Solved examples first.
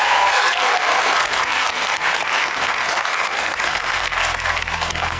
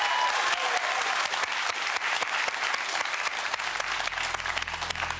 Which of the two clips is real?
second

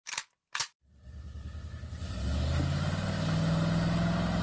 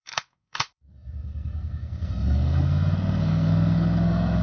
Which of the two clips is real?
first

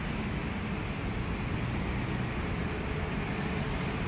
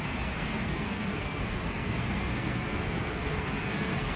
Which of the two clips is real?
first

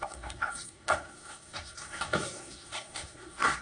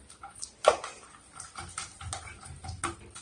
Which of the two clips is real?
second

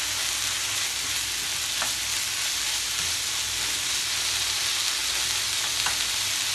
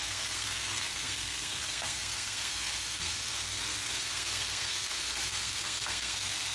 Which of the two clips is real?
first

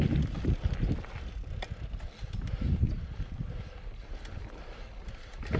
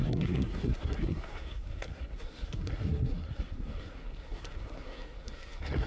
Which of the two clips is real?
first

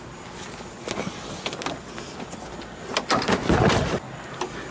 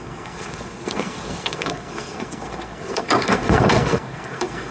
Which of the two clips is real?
first